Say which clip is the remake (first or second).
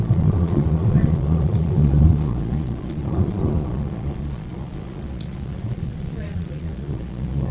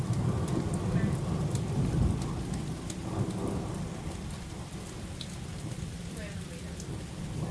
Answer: first